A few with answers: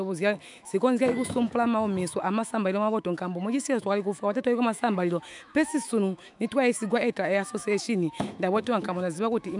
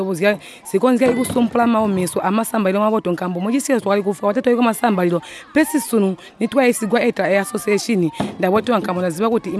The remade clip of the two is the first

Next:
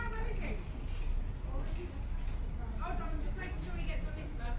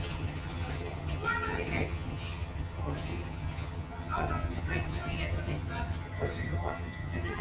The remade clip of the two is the second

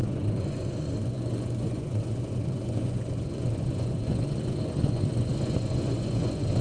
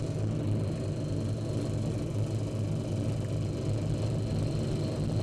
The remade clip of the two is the first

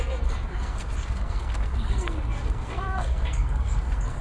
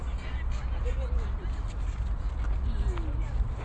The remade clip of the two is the first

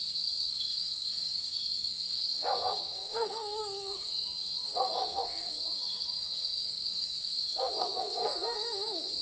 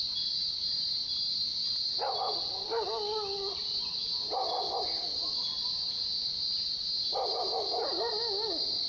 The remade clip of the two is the first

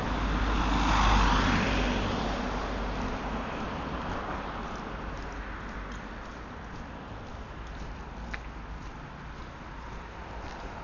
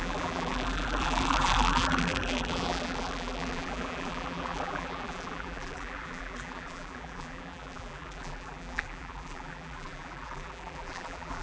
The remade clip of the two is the second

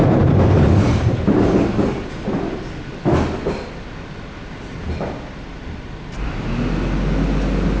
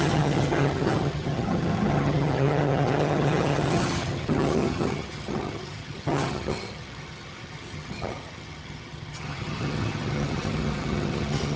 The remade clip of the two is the second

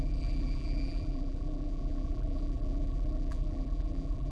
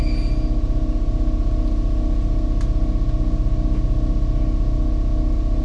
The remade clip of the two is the first